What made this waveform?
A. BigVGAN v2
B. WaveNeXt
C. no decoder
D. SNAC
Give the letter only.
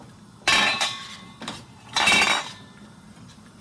A